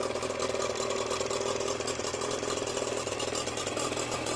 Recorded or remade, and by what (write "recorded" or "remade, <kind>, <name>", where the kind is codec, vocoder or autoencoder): recorded